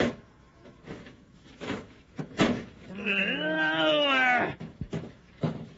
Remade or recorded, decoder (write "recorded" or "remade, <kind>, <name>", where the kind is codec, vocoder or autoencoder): remade, autoencoder, DAC-VAE